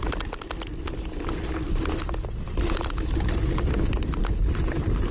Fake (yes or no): no